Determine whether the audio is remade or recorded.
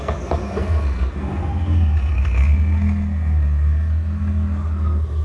remade